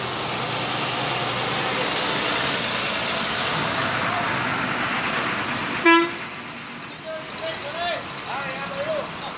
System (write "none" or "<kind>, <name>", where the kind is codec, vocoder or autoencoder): none